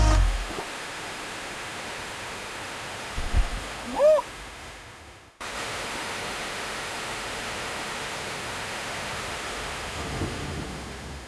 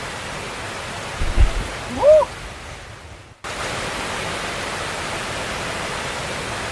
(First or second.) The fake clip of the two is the first